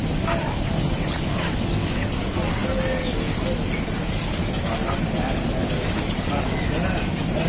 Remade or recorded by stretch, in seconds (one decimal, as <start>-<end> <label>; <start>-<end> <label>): 0.0-7.5 recorded